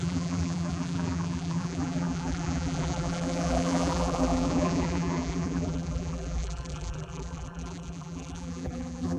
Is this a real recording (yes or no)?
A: no